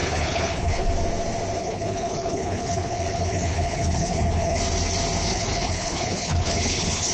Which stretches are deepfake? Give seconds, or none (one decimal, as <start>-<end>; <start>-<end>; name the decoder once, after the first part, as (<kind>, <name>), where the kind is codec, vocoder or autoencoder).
0.0-0.9 (codec, HILCodec); 1.6-4.6; 5.3-7.1